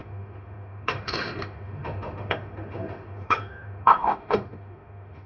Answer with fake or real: fake